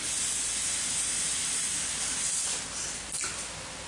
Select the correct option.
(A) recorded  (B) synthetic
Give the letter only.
A